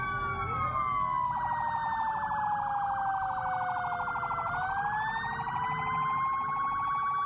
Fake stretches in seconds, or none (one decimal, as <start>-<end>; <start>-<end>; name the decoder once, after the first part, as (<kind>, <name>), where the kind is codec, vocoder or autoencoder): none